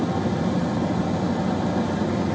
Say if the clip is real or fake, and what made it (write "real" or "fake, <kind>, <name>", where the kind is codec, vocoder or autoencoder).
real